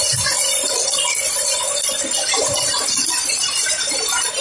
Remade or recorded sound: recorded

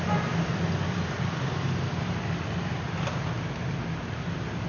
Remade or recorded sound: recorded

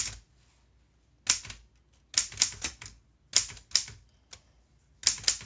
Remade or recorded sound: recorded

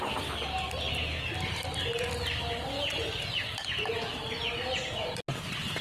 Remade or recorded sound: recorded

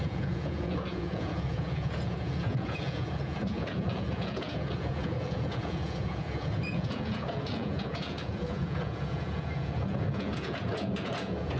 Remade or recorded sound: remade